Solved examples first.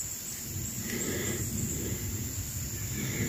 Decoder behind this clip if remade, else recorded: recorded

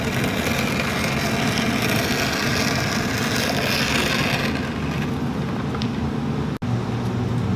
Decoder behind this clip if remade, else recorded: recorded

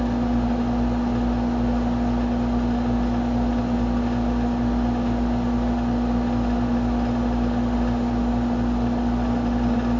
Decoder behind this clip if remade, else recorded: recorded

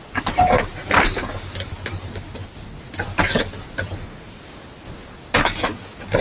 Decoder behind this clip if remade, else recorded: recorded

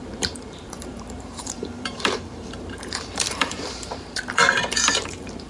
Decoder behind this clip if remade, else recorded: remade, vocoder, BigVGAN v2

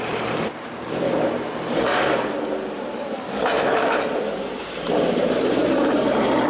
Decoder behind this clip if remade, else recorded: remade, vocoder, BigVGAN v2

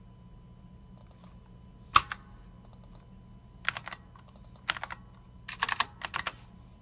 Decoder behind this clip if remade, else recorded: recorded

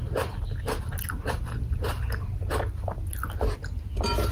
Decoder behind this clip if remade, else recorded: recorded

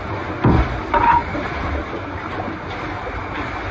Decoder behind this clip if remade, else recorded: recorded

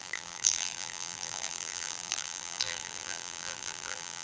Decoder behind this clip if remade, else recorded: remade, vocoder, BigVGAN v2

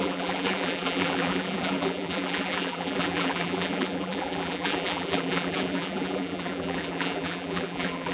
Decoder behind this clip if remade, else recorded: remade, vocoder, BigVGAN v2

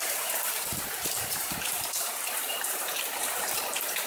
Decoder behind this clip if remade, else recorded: remade, vocoder, BigVGAN v2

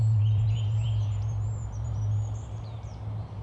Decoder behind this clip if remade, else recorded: remade, vocoder, BigVGAN v2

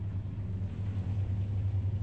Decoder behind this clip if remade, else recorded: recorded